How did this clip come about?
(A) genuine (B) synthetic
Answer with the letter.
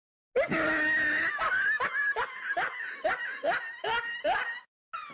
A